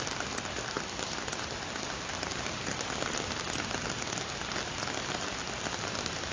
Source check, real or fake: real